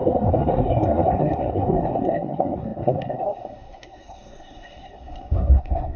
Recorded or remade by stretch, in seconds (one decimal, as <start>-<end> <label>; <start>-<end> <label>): 0.0-6.0 remade